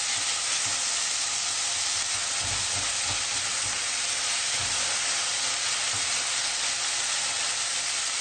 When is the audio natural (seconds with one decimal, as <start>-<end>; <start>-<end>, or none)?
0.0-8.2